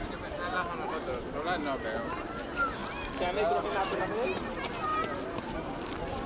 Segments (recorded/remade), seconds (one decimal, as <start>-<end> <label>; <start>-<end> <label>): 0.0-6.3 recorded